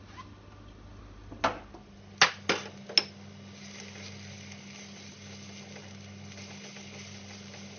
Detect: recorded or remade recorded